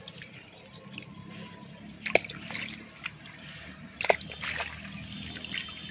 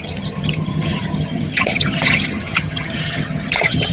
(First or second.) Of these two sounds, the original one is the first